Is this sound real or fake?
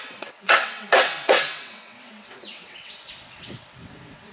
fake